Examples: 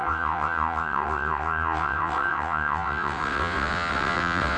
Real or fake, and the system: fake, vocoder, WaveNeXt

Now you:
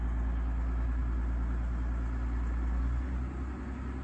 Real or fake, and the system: real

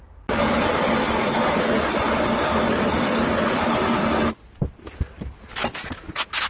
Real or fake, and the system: real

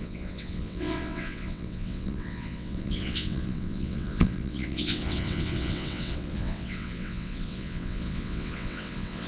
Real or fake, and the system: fake, vocoder, WaveNeXt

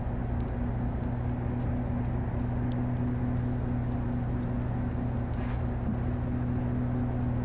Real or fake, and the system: real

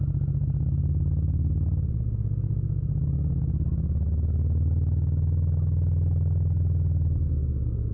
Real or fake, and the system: real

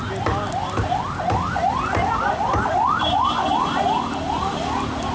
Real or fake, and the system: real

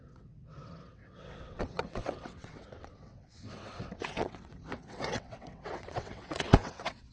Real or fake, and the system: fake, vocoder, WaveNeXt